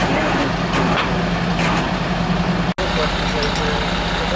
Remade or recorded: recorded